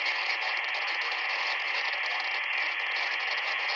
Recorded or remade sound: remade